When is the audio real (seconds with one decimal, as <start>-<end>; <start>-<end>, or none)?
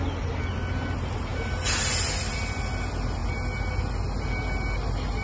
0.0-5.2